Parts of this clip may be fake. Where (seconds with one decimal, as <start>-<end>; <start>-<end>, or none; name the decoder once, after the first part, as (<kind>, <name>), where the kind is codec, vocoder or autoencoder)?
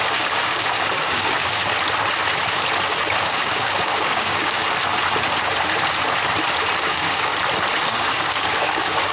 0.0-1.6 (codec, DAC); 2.9-4.6; 6.8-7.3; 7.9-9.1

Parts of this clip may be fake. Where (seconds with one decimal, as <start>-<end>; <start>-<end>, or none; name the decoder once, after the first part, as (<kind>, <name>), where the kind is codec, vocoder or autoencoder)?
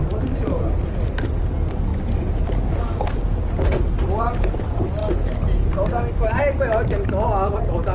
none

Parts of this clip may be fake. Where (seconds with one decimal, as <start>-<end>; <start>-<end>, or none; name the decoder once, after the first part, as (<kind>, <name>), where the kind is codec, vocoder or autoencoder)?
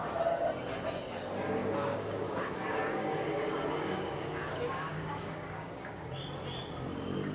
1.6-6.0 (codec, DAC)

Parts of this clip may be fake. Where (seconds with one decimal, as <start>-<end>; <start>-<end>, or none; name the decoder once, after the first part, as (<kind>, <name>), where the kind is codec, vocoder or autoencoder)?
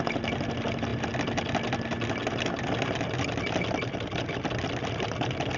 none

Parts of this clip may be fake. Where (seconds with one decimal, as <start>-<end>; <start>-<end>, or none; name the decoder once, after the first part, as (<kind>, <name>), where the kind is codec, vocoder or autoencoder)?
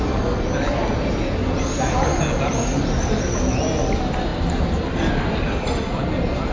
none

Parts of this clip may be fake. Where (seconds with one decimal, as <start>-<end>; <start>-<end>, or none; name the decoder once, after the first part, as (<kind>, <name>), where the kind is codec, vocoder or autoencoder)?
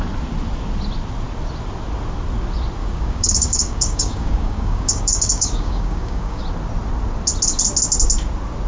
2.8-6.4 (codec, DAC)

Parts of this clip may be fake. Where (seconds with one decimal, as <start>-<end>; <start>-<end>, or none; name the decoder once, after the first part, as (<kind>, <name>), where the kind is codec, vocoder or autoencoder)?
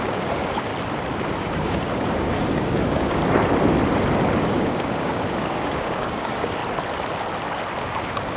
0.0-0.7 (codec, DAC); 1.4-3.2; 4.4-6.6; 7.8-8.4